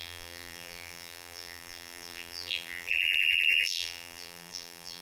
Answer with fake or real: fake